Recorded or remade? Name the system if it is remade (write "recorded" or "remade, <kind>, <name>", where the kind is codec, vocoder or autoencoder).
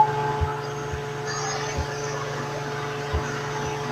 recorded